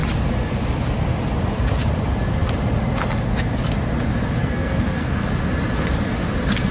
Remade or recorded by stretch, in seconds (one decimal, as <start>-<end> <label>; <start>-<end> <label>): 0.0-4.4 recorded; 4.4-5.3 remade; 5.3-6.7 recorded